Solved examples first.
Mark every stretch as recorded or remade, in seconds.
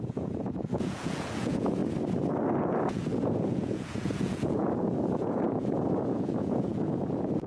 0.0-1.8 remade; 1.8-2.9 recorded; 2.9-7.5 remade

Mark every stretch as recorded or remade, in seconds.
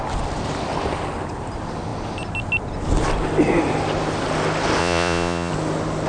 0.0-4.8 recorded; 4.8-5.5 remade; 5.5-6.1 recorded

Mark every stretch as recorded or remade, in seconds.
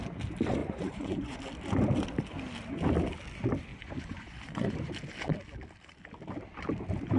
0.0-0.6 recorded; 0.6-1.4 remade; 1.4-3.7 recorded; 3.7-4.9 remade; 4.9-7.2 recorded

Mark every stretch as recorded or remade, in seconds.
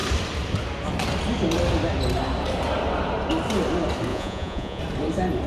0.0-4.1 recorded; 4.1-4.8 remade; 4.8-5.5 recorded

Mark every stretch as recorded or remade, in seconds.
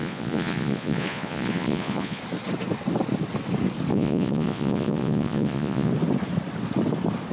0.0-2.2 remade; 2.2-3.9 recorded; 3.9-5.9 remade; 5.9-7.3 recorded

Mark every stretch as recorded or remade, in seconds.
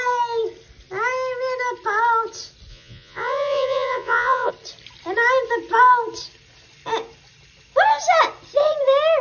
0.0-2.7 recorded; 2.7-4.5 remade; 4.5-9.2 recorded